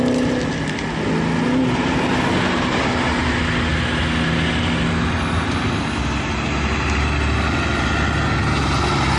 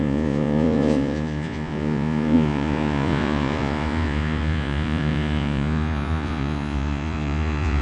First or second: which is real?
first